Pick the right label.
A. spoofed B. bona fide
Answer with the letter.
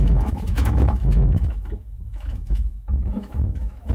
A